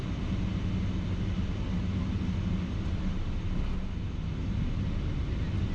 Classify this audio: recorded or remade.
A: recorded